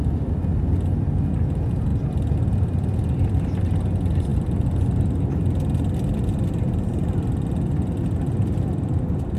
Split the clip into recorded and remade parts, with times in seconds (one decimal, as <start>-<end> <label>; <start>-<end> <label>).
0.0-9.4 recorded